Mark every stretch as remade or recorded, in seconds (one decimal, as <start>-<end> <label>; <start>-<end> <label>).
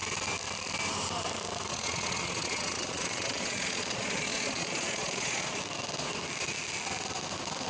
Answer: 0.0-1.7 recorded; 1.7-5.6 remade; 5.6-7.7 recorded